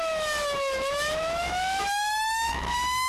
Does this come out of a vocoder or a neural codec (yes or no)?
yes